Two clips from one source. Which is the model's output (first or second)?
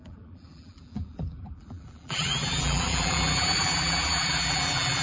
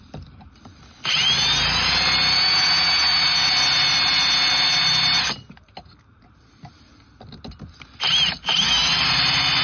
first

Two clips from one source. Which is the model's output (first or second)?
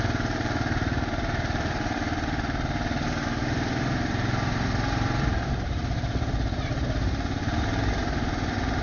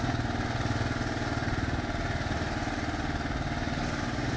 first